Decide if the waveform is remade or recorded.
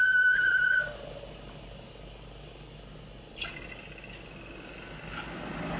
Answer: recorded